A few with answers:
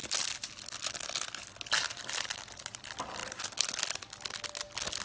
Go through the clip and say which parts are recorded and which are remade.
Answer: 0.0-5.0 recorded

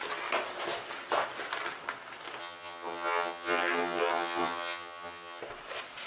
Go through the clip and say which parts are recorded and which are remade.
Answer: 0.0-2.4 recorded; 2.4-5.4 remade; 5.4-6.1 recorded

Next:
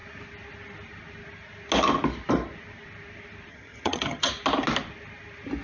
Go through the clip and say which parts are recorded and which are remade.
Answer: 0.0-3.5 recorded; 3.5-4.3 remade; 4.3-5.6 recorded

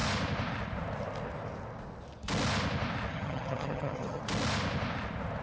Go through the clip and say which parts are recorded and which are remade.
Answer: 0.0-3.1 recorded; 3.1-4.2 remade; 4.2-5.4 recorded

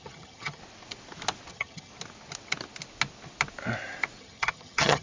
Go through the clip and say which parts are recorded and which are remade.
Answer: 0.0-0.6 remade; 0.6-1.5 recorded; 1.5-1.9 remade; 1.9-4.2 recorded; 4.2-5.0 remade

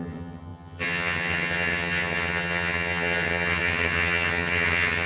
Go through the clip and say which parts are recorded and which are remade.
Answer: 0.0-5.1 remade